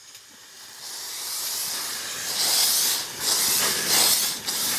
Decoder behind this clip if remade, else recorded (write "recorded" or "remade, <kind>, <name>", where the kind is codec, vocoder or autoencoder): recorded